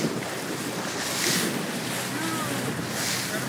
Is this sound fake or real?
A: real